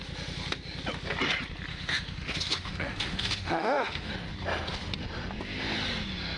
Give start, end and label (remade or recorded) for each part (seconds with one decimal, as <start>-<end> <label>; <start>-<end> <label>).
0.0-1.7 recorded; 1.7-4.1 remade; 4.1-6.4 recorded